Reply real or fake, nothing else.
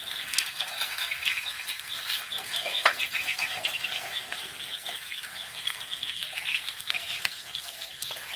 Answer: fake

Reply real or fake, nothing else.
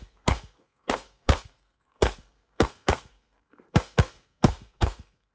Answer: fake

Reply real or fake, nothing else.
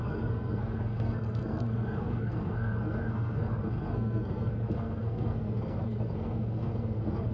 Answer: fake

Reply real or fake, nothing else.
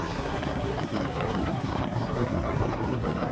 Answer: fake